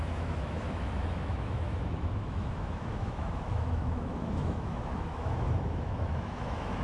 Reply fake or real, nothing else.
fake